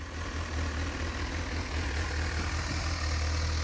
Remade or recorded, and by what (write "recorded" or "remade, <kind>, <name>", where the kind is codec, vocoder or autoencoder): recorded